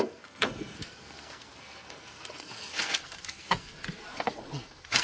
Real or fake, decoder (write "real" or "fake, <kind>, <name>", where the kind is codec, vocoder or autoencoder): fake, codec, SNAC